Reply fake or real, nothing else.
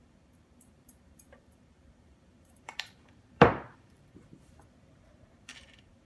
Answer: fake